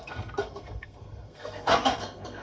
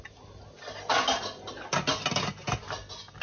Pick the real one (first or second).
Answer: second